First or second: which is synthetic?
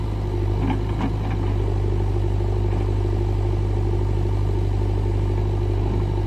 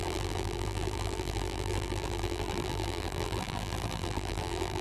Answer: second